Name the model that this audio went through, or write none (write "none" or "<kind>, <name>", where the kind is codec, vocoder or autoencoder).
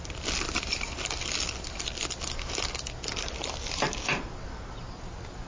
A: none